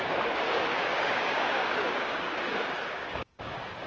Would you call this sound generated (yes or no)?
yes